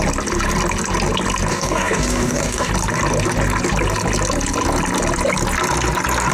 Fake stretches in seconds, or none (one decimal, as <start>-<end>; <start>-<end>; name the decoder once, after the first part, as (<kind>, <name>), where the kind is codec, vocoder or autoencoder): 1.5-2.7 (codec, DAC)